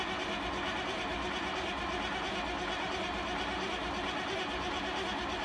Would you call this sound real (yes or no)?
yes